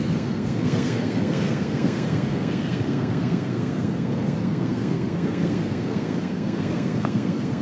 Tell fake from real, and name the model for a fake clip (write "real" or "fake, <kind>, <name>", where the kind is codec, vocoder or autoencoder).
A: fake, codec, SNAC